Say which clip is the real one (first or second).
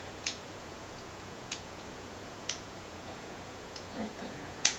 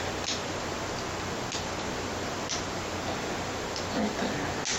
second